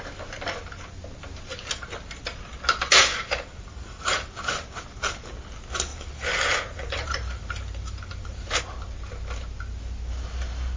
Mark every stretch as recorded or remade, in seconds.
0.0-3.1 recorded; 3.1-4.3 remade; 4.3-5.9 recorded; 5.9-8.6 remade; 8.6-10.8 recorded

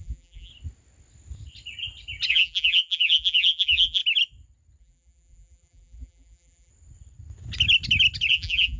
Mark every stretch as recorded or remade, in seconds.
0.0-0.5 remade; 0.5-2.3 recorded; 2.3-4.0 remade; 4.0-4.8 recorded; 4.8-6.7 remade; 6.7-8.3 recorded; 8.3-8.8 remade

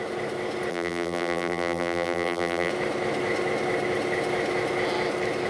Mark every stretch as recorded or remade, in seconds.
0.0-0.7 recorded; 0.7-2.7 remade; 2.7-5.5 recorded

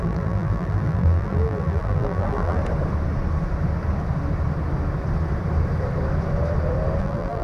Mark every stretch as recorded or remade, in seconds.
0.0-2.6 remade; 2.6-7.0 recorded; 7.0-7.4 remade